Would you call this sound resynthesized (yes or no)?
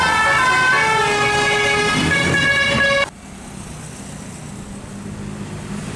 no